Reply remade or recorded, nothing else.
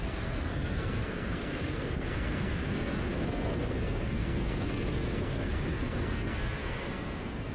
remade